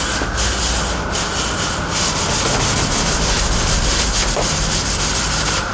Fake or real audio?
real